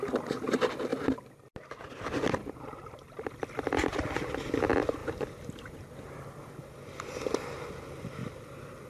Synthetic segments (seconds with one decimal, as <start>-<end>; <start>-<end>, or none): none